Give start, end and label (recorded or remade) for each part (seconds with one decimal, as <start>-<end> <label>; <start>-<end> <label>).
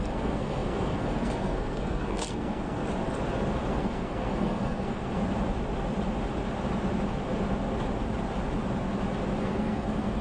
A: 0.0-2.8 remade; 2.8-3.7 recorded; 3.7-5.2 remade; 5.2-9.4 recorded; 9.4-10.2 remade